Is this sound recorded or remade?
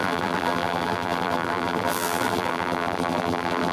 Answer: remade